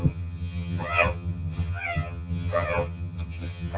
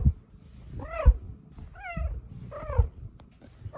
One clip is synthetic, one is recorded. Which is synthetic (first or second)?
first